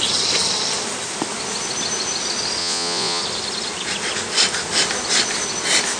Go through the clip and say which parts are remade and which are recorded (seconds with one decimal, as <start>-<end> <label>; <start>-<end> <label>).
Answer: 0.0-2.6 recorded; 2.6-3.2 remade; 3.2-6.0 recorded